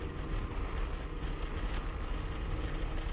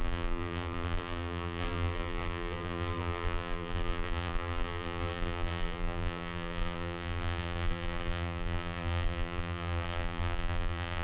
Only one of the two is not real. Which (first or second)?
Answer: second